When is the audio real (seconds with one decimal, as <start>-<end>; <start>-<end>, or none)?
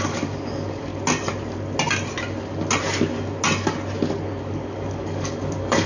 0.9-4.4